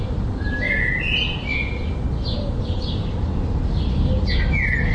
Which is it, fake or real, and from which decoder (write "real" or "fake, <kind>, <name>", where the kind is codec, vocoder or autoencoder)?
real